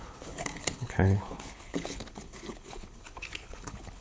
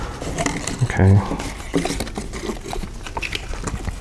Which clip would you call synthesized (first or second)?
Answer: first